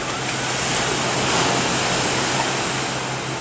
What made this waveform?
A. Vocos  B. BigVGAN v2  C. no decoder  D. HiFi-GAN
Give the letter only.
C